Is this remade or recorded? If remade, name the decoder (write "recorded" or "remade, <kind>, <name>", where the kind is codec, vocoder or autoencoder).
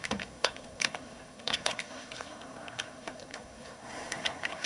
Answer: remade, codec, SNAC